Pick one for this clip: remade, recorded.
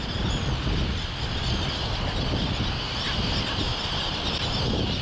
recorded